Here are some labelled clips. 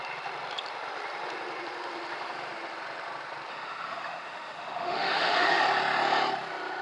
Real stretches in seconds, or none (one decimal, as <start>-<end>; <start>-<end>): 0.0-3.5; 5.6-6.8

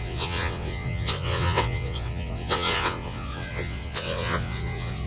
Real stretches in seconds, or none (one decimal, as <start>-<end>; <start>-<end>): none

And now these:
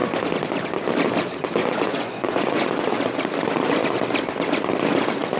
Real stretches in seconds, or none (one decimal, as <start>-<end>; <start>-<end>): 0.0-1.6; 2.7-5.4

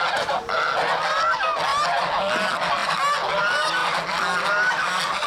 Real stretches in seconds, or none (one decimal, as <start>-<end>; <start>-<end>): 0.0-5.3

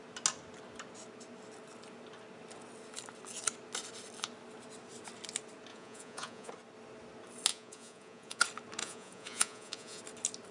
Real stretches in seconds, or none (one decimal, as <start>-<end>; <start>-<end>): 0.0-5.7; 6.5-7.5; 8.4-8.8; 10.0-10.5